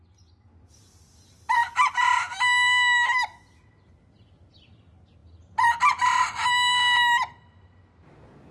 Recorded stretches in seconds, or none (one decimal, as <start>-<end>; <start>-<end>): 0.0-8.5